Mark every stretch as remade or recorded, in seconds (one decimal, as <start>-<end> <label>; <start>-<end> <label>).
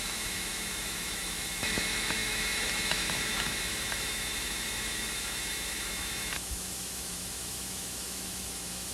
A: 0.0-8.9 remade